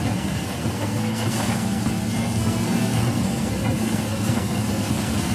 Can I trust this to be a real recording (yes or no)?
no